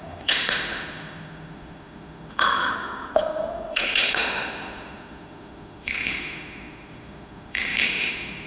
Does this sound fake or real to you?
fake